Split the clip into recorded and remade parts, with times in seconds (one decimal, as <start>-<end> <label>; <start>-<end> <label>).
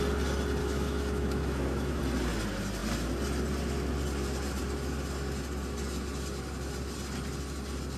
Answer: 0.0-0.6 recorded; 0.6-2.0 remade; 2.0-8.0 recorded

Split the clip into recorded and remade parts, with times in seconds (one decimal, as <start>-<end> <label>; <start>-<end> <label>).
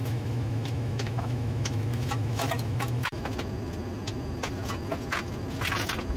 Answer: 0.0-3.2 remade; 3.2-6.2 recorded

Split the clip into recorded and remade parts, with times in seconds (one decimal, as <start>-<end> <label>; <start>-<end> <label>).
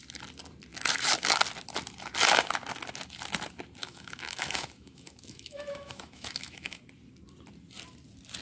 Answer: 0.0-3.8 recorded; 3.8-6.8 remade; 6.8-8.4 recorded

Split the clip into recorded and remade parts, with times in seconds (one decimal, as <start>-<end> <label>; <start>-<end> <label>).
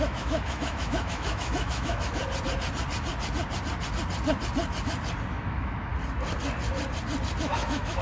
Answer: 0.0-2.2 remade; 2.2-5.3 recorded; 5.3-5.9 remade; 5.9-7.4 recorded; 7.4-8.0 remade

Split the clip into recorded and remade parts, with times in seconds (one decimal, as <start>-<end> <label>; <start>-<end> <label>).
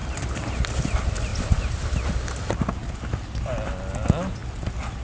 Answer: 0.0-5.0 recorded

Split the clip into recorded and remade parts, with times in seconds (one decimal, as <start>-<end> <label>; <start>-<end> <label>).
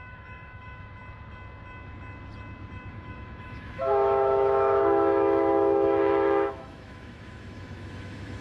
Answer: 0.0-1.0 remade; 1.0-2.9 recorded; 2.9-8.4 remade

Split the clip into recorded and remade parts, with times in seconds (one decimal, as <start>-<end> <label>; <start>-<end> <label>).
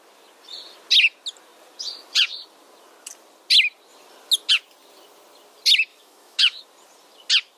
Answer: 0.0-5.9 recorded; 5.9-6.6 remade; 6.6-7.6 recorded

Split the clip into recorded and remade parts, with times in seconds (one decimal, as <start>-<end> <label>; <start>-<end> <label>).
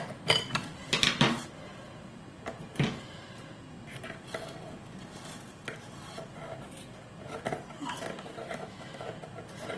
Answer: 0.0-8.4 recorded; 8.4-9.1 remade; 9.1-9.8 recorded